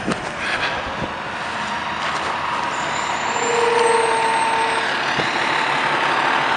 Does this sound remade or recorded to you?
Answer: recorded